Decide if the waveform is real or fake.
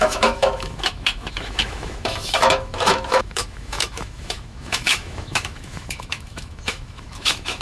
fake